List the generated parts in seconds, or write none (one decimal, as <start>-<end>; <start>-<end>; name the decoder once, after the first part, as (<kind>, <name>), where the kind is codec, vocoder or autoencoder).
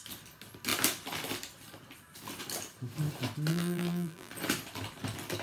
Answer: 3.5-4.3 (vocoder, BigVGAN v2)